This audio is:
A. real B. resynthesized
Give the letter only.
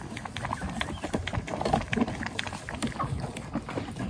A